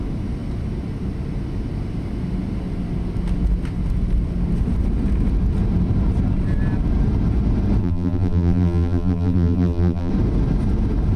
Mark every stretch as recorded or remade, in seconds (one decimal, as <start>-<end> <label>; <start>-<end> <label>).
0.0-7.8 recorded; 7.8-10.1 remade; 10.1-11.2 recorded